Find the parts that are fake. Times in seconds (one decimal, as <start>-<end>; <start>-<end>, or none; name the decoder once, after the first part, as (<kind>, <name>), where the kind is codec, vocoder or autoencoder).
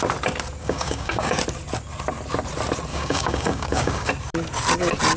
0.6-1.4 (codec, DAC); 2.9-4.1